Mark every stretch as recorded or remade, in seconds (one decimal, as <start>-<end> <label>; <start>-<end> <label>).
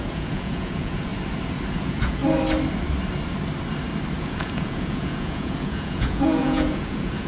0.0-1.1 remade; 1.1-1.7 recorded; 1.7-2.2 remade; 2.2-4.2 recorded; 4.2-7.3 remade